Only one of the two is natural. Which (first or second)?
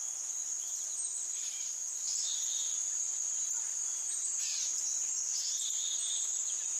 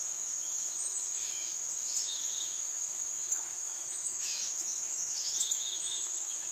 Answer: first